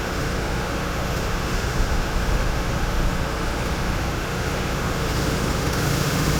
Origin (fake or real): fake